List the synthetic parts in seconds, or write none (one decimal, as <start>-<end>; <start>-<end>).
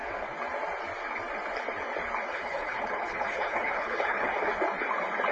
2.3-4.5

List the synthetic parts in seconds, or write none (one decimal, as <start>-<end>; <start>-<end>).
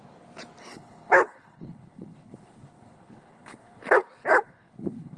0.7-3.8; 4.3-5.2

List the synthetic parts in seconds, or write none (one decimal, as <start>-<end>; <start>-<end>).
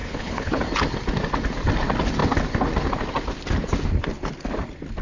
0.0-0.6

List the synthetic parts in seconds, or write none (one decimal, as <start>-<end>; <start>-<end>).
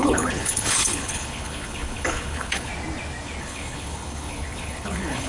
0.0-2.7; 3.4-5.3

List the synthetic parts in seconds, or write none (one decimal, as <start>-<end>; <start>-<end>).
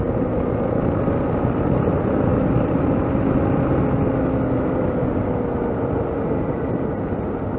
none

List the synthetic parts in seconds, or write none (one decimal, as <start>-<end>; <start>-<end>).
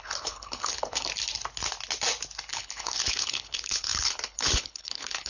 0.0-1.1; 2.5-5.3